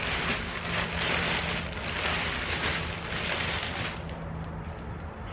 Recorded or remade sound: recorded